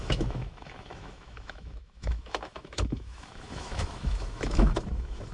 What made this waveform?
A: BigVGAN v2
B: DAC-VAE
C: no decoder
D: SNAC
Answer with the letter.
B